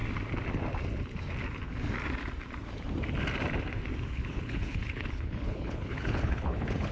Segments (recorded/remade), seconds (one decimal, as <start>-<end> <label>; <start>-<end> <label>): 0.0-4.1 recorded; 4.1-6.9 remade